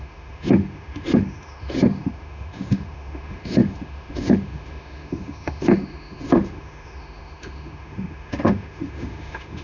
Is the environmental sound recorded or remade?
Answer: remade